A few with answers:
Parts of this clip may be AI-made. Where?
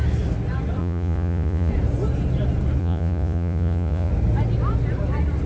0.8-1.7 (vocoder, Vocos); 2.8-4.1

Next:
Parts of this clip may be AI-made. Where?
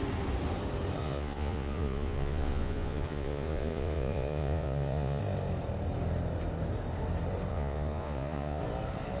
1.0-5.2 (vocoder, Vocos); 7.5-8.6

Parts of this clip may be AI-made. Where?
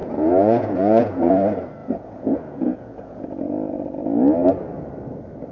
0.0-1.3 (vocoder, Vocos); 1.8-3.4